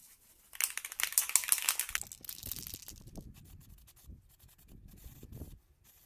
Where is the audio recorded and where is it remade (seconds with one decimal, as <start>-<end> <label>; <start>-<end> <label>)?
0.0-6.1 recorded